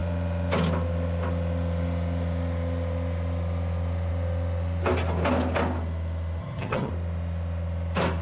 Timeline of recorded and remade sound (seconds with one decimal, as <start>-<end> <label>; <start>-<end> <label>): 0.0-6.4 recorded; 6.4-6.9 remade; 6.9-8.2 recorded